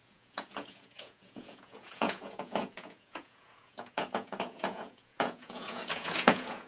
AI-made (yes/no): yes